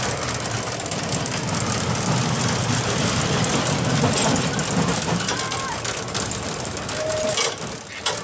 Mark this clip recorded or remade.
recorded